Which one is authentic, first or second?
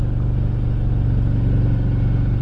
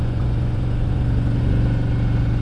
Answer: first